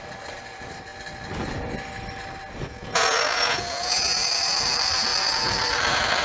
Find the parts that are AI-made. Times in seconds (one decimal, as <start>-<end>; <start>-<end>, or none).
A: 0.0-0.9; 4.6-6.2